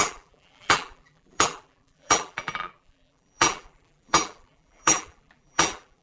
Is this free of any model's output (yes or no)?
no